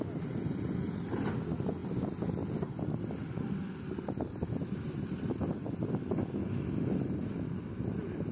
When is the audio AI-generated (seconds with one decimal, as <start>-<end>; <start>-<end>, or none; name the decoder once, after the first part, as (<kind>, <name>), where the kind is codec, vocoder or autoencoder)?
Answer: 3.2-4.5 (vocoder, BigVGAN v2)